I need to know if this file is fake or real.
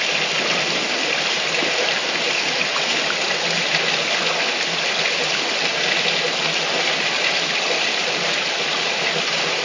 real